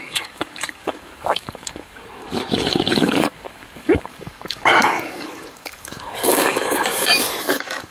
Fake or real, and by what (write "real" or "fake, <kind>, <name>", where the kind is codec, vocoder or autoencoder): fake, codec, DAC